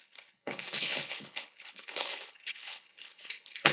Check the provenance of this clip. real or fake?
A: fake